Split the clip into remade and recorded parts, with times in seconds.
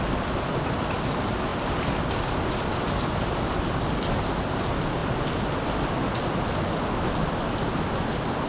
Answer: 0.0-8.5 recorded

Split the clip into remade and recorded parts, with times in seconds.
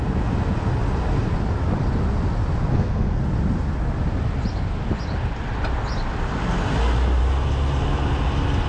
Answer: 0.0-2.7 recorded; 2.7-3.2 remade; 3.2-8.7 recorded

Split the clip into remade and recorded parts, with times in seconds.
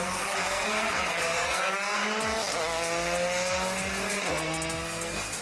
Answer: 0.0-2.0 remade; 2.0-4.3 recorded; 4.3-5.4 remade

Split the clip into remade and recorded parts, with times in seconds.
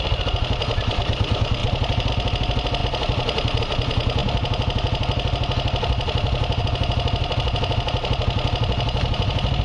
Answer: 0.0-1.6 recorded; 1.6-2.1 remade; 2.1-9.6 recorded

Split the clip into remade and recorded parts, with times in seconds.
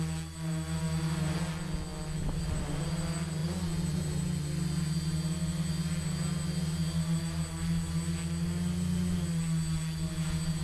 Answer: 0.0-10.6 recorded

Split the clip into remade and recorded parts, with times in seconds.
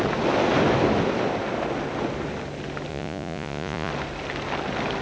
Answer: 0.0-2.9 recorded; 2.9-3.9 remade; 3.9-5.0 recorded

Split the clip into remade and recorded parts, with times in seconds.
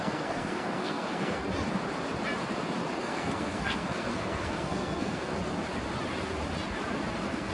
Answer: 0.0-1.4 remade; 1.4-3.0 recorded; 3.0-5.3 remade; 5.3-7.1 recorded; 7.1-7.5 remade